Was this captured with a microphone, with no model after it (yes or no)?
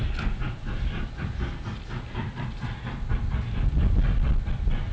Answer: yes